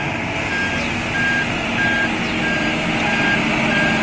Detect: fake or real real